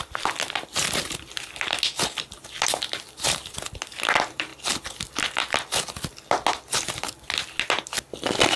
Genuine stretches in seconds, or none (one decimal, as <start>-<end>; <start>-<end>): 0.0-8.6